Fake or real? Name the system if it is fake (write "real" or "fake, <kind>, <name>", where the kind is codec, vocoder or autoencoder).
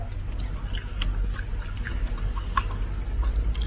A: real